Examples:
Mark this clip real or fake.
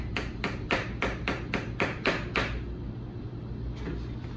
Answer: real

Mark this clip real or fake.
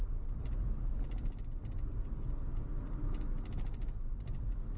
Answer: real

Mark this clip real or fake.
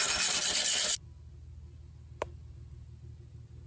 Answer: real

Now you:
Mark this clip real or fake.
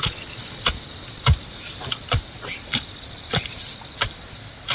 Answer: real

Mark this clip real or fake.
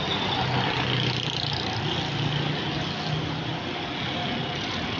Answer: real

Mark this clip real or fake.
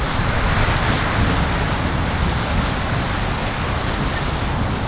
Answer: real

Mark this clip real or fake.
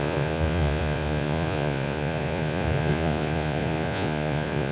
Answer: fake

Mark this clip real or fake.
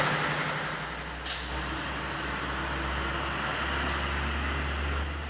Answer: real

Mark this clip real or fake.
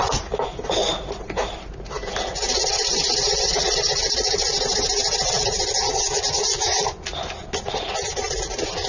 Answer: real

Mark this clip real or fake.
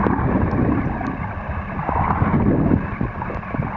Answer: real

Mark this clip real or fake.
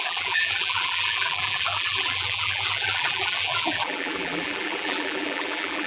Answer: fake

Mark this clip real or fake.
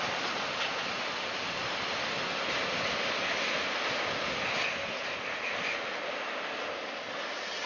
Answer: real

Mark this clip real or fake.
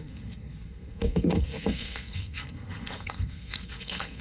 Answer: fake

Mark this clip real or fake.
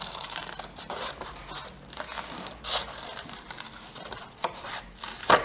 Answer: real